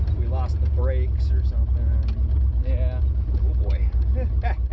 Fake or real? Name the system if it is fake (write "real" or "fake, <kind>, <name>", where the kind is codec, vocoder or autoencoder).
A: real